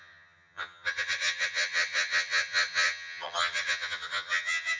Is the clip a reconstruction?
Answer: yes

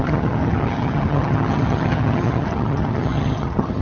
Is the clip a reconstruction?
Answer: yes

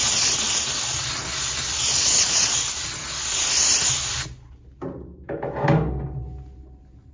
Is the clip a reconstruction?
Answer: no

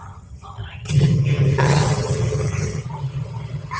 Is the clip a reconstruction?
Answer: yes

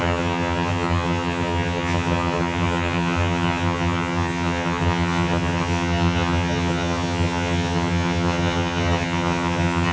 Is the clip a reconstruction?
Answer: yes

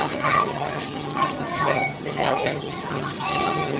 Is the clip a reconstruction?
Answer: yes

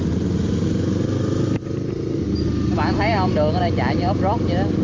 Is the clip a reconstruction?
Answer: no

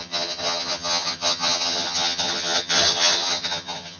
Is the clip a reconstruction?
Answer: yes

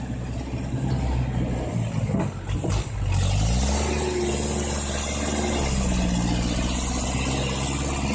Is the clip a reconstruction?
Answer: no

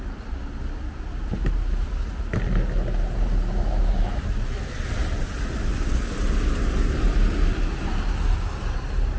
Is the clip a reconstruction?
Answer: no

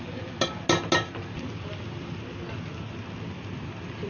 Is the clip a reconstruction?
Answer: no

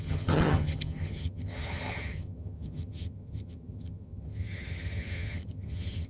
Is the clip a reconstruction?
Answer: yes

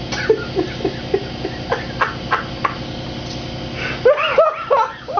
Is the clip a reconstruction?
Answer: no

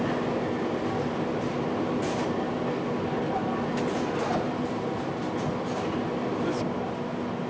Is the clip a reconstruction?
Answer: no